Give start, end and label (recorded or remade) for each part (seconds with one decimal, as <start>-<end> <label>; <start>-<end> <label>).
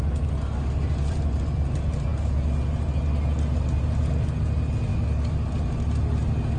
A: 0.0-6.6 recorded